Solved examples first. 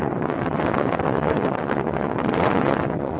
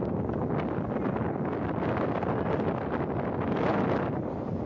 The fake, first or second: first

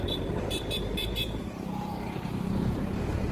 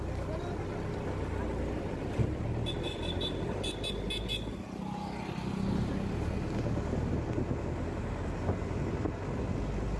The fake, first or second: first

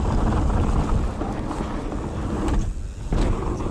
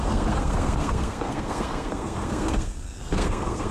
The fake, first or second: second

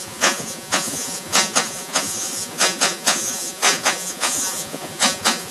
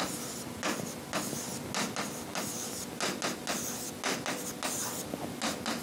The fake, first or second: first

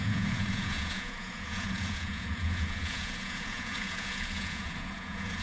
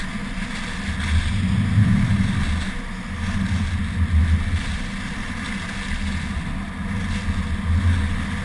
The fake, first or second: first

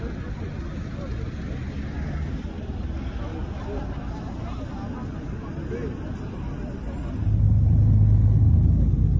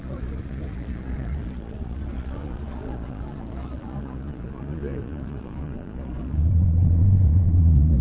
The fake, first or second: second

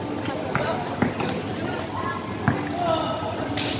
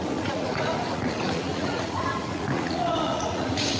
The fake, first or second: second